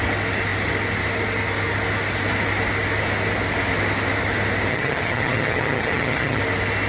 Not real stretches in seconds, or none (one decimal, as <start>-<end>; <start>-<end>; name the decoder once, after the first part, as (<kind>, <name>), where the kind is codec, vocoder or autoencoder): 4.7-6.4 (vocoder, HiFi-GAN)